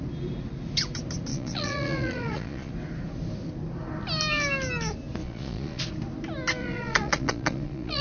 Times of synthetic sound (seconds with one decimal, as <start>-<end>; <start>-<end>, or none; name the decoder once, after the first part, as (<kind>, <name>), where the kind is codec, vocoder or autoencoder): 1.3-2.7 (vocoder, Vocos); 5.2-5.8; 6.6-8.0